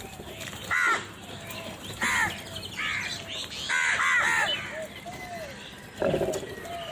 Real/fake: real